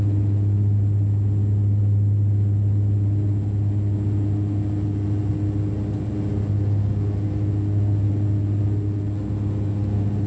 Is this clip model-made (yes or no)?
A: no